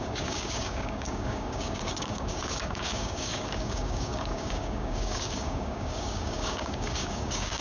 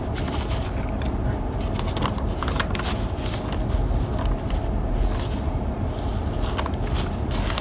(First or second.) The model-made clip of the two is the first